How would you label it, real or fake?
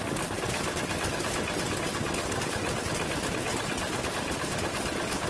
real